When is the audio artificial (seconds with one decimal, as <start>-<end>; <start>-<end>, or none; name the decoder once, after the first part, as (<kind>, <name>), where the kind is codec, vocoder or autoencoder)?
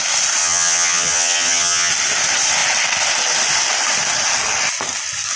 0.4-1.9 (vocoder, HiFi-GAN)